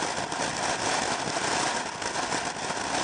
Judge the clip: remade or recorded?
recorded